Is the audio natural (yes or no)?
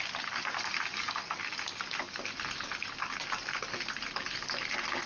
yes